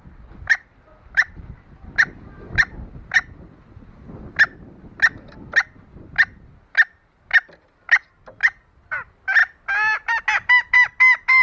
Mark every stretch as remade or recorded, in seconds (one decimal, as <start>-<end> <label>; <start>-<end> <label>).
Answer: 0.0-11.4 recorded